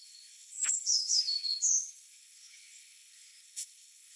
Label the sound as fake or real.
fake